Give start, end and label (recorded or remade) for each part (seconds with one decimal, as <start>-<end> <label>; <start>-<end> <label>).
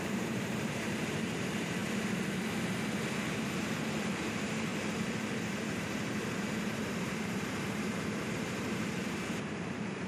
0.0-1.8 remade; 1.8-3.2 recorded; 3.2-10.1 remade